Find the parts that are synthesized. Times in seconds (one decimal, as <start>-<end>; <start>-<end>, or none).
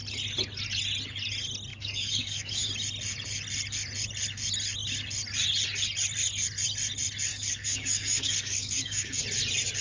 1.7-2.7; 7.3-9.2